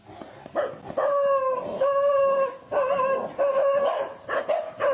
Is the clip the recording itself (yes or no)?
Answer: yes